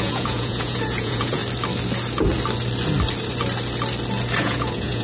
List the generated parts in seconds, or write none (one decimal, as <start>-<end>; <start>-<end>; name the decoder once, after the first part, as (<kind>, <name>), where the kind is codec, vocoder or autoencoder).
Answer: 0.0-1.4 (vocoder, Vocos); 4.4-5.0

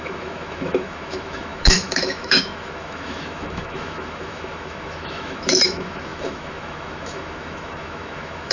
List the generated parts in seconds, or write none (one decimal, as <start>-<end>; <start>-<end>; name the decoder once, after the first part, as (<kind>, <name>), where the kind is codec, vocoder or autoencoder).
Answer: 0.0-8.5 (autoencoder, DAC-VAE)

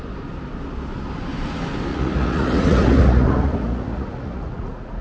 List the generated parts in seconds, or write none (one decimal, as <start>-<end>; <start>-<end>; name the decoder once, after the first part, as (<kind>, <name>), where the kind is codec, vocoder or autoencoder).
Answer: 1.9-5.0 (vocoder, Vocos)

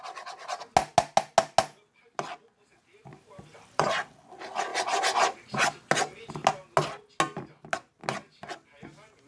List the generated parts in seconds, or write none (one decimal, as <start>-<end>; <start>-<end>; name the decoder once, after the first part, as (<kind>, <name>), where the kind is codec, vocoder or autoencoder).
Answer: 3.1-3.9 (vocoder, BigVGAN v2)

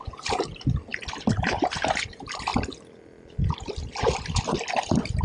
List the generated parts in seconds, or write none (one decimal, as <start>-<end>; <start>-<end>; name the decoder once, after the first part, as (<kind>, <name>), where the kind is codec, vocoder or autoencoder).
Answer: 0.0-0.9 (vocoder, BigVGAN v2); 1.4-2.5